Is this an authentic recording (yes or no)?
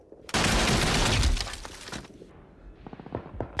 yes